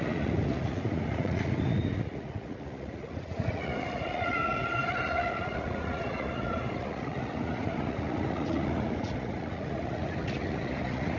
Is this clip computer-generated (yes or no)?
yes